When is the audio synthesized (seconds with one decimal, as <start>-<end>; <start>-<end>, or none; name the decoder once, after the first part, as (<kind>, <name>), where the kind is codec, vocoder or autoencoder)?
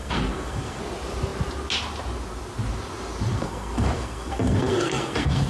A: 0.0-0.8 (codec, SNAC); 3.3-5.5